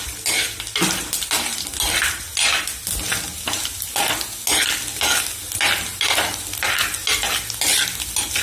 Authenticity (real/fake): real